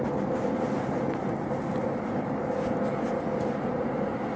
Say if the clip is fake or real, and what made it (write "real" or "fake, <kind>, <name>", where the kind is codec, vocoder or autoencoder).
real